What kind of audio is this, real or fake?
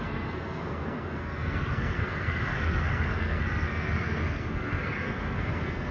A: fake